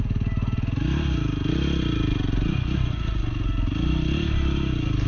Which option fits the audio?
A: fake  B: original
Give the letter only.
B